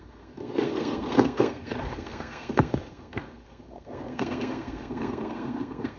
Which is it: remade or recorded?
remade